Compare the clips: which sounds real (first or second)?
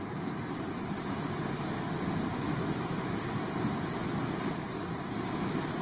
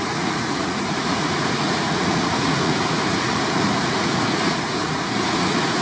first